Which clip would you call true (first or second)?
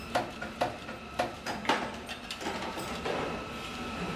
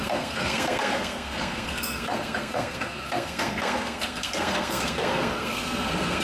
first